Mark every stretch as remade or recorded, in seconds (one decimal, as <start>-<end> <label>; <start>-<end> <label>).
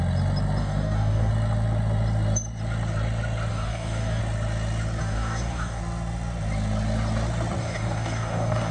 0.0-0.6 recorded; 0.6-1.3 remade; 1.3-3.5 recorded; 3.5-4.2 remade; 4.2-5.0 recorded; 5.0-5.8 remade; 5.8-7.6 recorded; 7.6-8.7 remade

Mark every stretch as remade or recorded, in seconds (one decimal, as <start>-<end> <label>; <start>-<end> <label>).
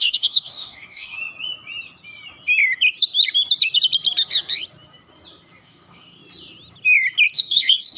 0.0-1.2 remade; 1.2-5.6 recorded; 5.6-6.2 remade; 6.2-7.3 recorded; 7.3-8.0 remade